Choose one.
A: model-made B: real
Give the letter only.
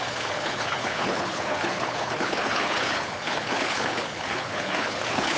A